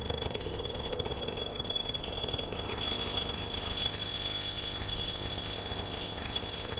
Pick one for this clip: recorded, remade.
remade